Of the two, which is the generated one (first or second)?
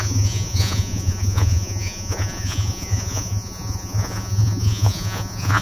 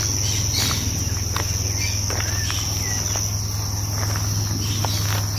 first